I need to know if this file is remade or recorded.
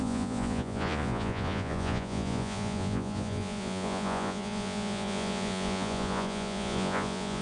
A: remade